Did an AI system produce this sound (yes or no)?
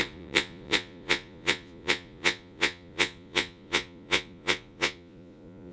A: yes